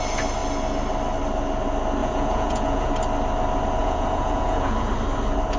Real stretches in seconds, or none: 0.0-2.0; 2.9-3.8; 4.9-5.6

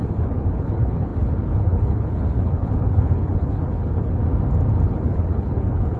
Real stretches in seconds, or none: 4.2-4.9

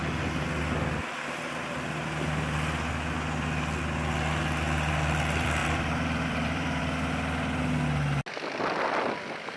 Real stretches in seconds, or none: 0.0-5.6; 6.8-9.6

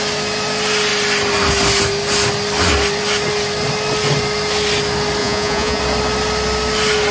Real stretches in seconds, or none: 0.0-5.2; 5.8-7.1

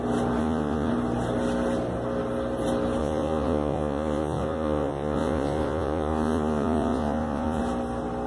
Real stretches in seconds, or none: 0.0-0.4; 0.9-3.0; 7.6-8.3

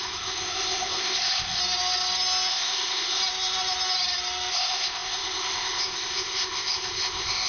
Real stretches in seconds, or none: 1.6-2.5; 3.2-4.5